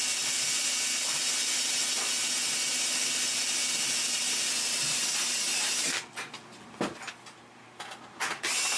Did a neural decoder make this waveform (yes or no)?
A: no